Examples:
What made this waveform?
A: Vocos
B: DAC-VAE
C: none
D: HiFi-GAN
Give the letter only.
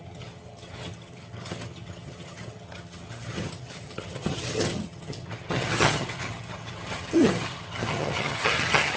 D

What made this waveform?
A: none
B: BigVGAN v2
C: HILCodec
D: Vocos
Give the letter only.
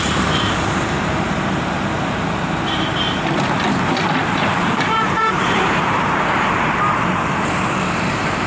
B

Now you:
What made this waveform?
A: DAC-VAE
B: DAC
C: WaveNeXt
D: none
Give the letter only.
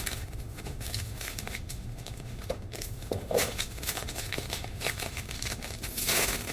A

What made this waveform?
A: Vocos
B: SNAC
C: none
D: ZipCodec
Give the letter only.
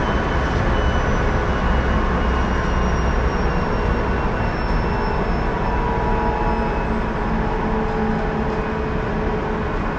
C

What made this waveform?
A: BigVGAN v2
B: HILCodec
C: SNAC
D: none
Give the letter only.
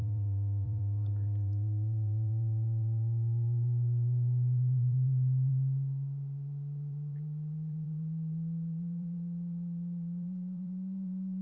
A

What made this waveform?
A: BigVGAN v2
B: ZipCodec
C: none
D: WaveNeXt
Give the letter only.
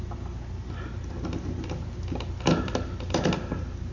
C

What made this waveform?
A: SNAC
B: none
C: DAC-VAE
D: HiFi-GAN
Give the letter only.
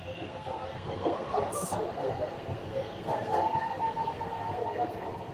A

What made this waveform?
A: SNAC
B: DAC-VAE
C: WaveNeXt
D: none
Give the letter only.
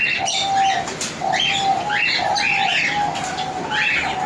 D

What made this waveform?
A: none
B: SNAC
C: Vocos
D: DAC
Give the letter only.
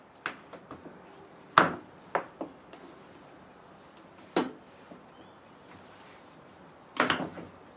A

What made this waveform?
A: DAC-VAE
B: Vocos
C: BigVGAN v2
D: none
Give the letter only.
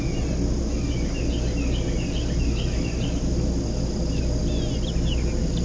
D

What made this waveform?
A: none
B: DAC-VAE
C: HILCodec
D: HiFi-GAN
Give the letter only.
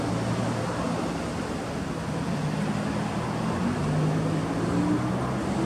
A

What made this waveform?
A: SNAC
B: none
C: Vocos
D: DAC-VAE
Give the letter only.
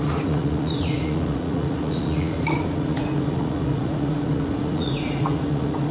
C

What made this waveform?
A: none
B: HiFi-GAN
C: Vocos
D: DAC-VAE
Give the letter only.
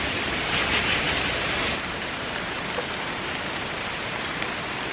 A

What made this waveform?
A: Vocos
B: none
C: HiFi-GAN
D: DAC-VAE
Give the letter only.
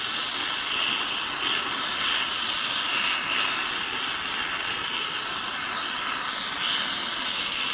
B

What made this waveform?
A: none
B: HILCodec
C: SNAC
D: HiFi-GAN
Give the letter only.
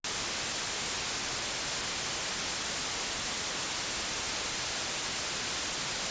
A